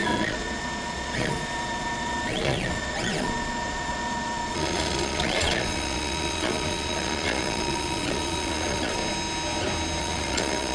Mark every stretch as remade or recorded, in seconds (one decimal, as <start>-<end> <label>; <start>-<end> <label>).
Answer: 0.0-9.0 remade; 9.0-10.0 recorded; 10.0-10.7 remade